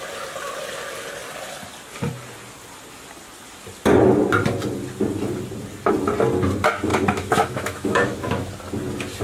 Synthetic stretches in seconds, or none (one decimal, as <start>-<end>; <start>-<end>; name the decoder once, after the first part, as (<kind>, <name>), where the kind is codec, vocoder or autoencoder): 6.9-8.5 (autoencoder, DAC-VAE)